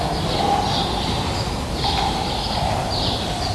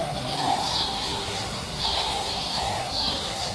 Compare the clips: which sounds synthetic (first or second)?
second